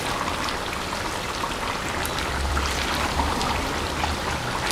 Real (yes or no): no